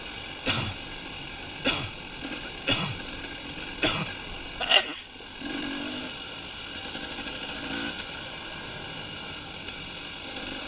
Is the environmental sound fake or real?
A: real